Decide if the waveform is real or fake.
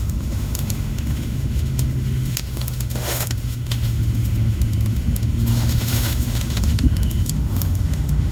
fake